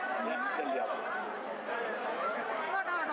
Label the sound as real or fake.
real